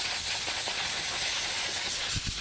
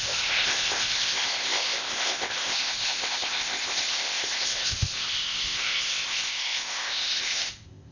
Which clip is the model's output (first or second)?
second